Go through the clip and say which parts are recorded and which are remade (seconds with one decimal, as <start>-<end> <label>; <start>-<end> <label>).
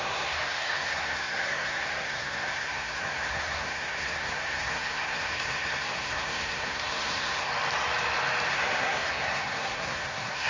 0.0-7.5 remade; 7.5-8.5 recorded; 8.5-10.5 remade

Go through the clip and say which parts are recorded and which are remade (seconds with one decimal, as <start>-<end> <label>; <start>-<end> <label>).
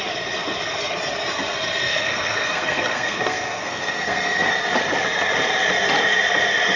0.0-1.9 recorded; 1.9-4.5 remade; 4.5-6.8 recorded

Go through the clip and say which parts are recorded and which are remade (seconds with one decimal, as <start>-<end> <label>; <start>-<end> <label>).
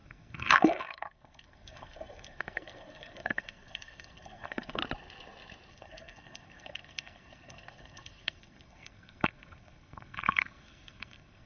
0.0-4.8 remade; 4.8-5.7 recorded; 5.7-11.5 remade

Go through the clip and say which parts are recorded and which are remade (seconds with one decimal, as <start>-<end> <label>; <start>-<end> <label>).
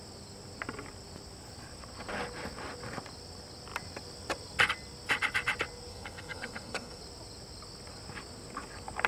0.0-5.9 recorded; 5.9-7.0 remade; 7.0-9.1 recorded